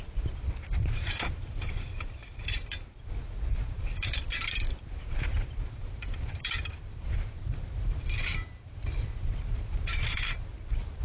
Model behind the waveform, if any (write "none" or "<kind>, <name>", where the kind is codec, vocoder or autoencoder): vocoder, BigVGAN v2